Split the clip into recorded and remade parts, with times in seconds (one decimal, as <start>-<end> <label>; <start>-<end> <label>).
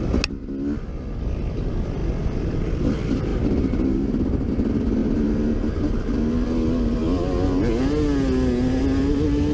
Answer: 0.0-3.3 recorded; 3.3-4.5 remade; 4.5-5.0 recorded; 5.0-5.9 remade; 5.9-9.5 recorded